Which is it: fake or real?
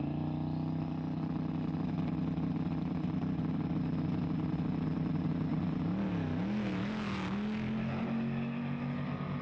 real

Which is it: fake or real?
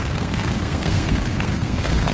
fake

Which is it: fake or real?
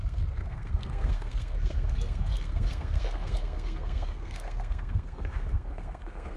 fake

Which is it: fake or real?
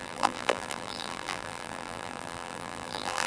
fake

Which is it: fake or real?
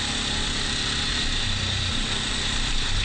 fake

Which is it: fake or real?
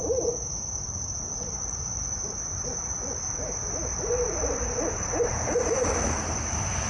fake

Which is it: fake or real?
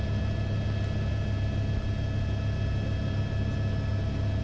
real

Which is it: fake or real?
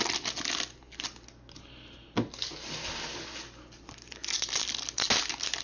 real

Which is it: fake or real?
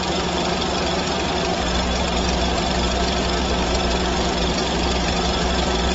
fake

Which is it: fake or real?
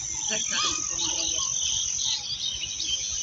real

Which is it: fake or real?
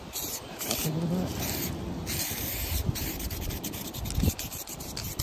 real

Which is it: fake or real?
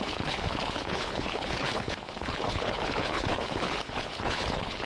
fake